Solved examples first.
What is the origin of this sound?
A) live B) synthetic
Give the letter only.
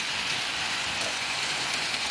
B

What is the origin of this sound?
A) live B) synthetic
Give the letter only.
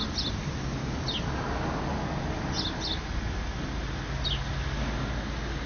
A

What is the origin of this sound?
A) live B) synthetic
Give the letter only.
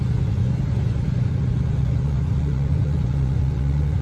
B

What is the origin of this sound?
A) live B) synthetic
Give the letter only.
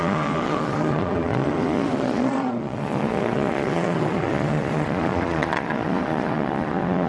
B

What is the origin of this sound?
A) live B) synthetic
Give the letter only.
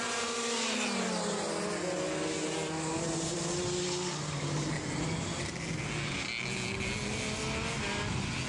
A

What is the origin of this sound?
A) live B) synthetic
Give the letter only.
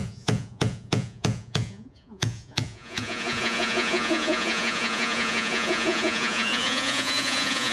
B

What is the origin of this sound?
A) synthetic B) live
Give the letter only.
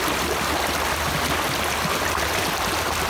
B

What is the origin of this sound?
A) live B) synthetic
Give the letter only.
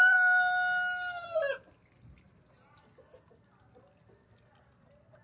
A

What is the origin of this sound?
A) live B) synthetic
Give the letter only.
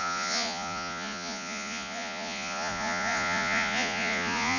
B